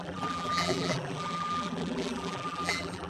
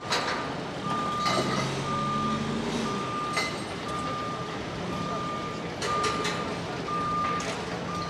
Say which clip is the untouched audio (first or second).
second